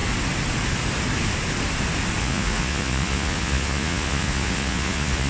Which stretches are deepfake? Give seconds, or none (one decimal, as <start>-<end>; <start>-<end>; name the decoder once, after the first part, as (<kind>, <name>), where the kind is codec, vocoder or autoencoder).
2.2-5.3 (vocoder, Vocos)